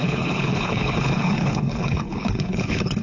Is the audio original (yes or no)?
no